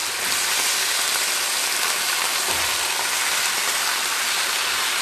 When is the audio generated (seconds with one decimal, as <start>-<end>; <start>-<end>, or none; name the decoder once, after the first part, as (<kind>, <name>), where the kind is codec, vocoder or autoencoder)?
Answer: 1.8-2.7 (vocoder, BigVGAN v2); 3.6-5.0